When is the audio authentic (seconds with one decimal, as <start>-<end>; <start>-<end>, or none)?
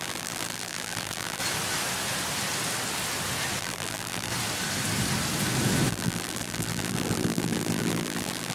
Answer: 1.4-3.6; 4.3-5.9